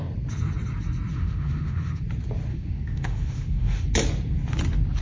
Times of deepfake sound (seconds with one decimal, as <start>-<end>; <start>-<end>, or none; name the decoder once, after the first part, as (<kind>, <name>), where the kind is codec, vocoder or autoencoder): 1.1-2.0 (autoencoder, DAC-VAE); 2.5-3.8